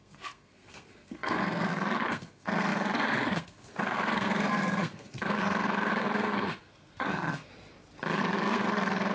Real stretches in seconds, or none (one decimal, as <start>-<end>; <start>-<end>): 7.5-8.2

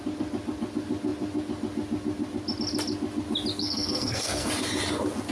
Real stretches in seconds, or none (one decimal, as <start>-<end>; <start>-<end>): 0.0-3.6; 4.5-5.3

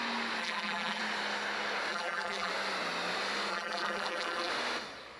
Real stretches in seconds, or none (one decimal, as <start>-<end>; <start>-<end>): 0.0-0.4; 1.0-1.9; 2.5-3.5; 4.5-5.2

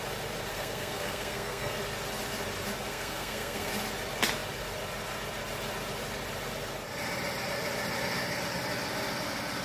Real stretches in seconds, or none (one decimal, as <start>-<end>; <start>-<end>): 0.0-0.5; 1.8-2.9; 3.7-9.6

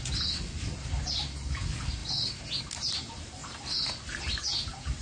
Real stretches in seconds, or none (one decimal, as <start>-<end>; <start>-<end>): 0.0-5.0

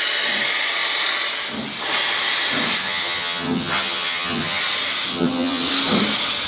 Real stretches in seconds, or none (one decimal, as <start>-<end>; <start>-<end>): 0.0-2.8; 4.6-5.1; 5.7-6.5

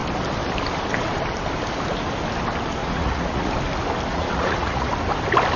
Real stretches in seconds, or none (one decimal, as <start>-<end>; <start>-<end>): 0.0-2.8; 3.5-4.1; 4.9-5.6

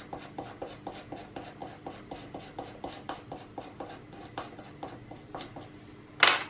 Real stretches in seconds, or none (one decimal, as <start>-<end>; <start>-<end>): 0.0-1.6; 3.6-6.5